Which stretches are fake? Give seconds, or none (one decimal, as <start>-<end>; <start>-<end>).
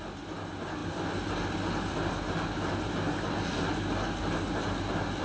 none